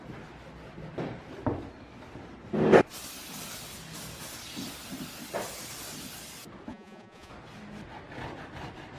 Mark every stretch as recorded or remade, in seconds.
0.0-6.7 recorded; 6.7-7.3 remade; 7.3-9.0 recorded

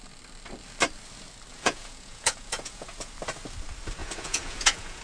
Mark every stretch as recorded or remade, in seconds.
0.0-1.5 recorded; 1.5-3.1 remade; 3.1-4.0 recorded; 4.0-5.0 remade

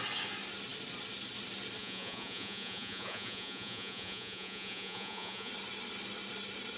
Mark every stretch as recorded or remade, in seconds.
0.0-1.8 recorded; 1.8-5.5 remade; 5.5-6.8 recorded